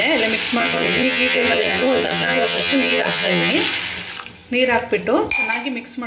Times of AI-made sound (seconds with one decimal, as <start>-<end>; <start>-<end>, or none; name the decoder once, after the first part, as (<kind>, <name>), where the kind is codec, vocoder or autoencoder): 0.6-3.5 (vocoder, HiFi-GAN)